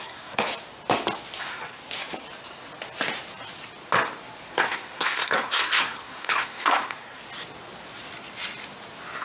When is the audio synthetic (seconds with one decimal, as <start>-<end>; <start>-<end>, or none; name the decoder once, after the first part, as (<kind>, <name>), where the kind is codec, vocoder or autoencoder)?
0.0-0.5 (codec, SNAC); 1.4-1.8; 4.5-7.2